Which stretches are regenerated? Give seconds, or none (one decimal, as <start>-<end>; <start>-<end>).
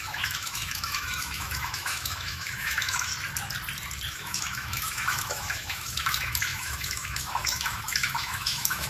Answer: 0.0-3.1; 4.1-8.9